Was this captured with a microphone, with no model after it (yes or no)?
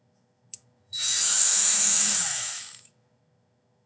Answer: no